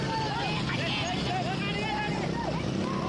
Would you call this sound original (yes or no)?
yes